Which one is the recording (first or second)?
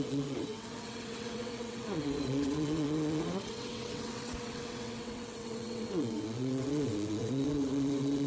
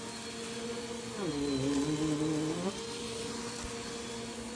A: second